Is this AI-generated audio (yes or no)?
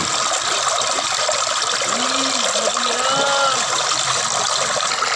no